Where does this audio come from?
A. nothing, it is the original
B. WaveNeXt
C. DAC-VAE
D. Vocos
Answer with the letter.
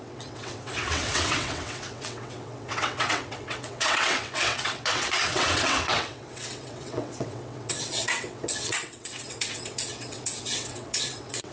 B